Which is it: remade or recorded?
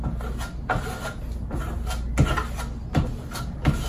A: recorded